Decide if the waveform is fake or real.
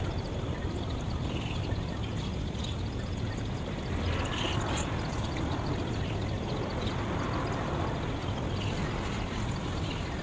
real